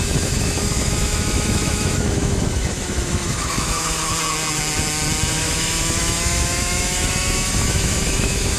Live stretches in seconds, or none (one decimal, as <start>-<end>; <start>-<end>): 4.1-5.3